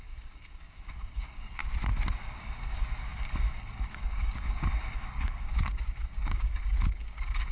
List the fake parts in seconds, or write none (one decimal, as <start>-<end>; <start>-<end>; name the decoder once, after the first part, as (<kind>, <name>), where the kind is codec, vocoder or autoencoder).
0.0-1.6 (codec, DAC); 2.2-7.5